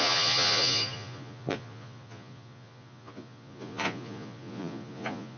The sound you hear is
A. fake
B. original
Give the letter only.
A